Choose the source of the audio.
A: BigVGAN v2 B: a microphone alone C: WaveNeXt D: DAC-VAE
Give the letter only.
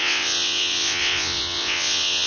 C